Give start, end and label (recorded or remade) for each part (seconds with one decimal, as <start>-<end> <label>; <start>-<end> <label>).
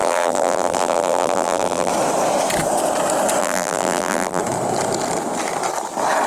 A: 0.0-1.9 remade; 1.9-3.4 recorded; 3.4-4.4 remade; 4.4-6.3 recorded